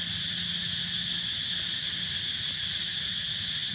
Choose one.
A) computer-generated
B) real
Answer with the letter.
B